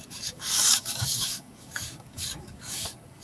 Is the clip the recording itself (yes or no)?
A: no